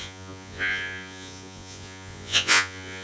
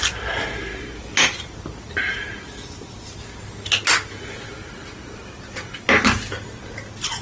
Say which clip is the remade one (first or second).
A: first